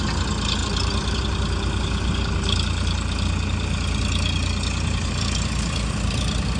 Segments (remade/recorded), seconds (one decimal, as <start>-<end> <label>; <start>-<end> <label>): 0.0-0.6 recorded; 0.6-1.2 remade; 1.2-6.6 recorded